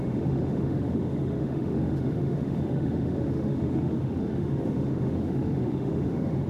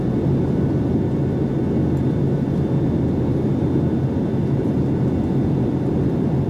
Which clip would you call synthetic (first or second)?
first